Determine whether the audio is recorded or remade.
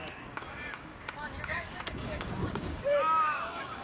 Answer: remade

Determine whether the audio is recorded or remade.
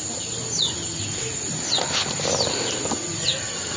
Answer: recorded